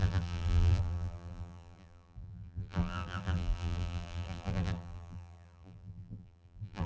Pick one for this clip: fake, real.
fake